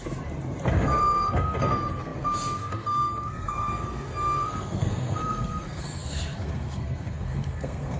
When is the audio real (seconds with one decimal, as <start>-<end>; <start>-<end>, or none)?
0.0-0.7